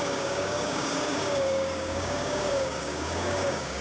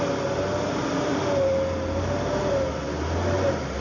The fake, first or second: first